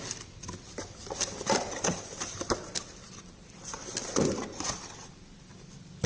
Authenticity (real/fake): fake